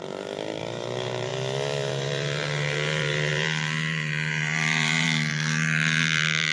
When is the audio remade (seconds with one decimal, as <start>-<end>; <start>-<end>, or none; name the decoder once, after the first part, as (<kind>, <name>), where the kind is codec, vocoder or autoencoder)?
0.0-1.3 (vocoder, BigVGAN v2); 1.9-6.5